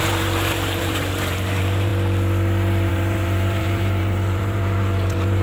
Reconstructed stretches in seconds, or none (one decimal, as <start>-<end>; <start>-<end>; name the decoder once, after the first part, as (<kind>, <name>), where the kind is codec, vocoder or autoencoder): 0.0-1.9 (vocoder, BigVGAN v2); 2.9-5.4